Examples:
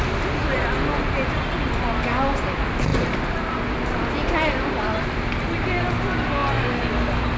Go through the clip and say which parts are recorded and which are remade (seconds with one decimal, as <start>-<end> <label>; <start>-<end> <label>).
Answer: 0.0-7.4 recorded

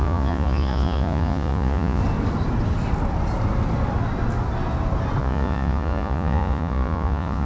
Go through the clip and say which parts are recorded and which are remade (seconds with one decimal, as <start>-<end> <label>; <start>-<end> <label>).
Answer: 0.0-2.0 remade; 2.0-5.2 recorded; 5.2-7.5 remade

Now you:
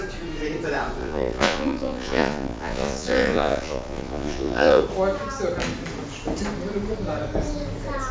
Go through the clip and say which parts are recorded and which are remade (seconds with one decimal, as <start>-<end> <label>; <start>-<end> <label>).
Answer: 0.0-1.0 recorded; 1.0-4.8 remade; 4.8-8.1 recorded